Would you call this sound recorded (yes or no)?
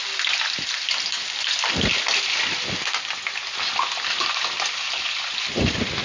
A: yes